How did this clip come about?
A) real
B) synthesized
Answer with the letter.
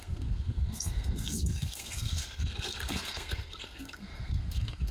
B